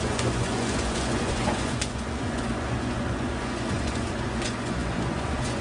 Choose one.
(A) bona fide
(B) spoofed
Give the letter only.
B